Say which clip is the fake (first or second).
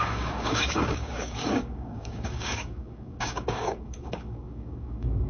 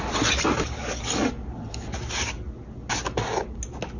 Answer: first